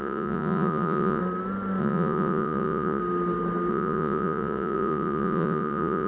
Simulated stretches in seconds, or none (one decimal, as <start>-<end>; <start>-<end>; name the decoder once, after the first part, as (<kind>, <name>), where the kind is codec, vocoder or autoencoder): 0.0-1.2 (vocoder, Vocos); 1.8-3.0; 3.7-6.1